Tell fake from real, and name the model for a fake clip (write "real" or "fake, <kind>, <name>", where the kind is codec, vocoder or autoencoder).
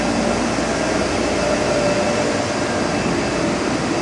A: real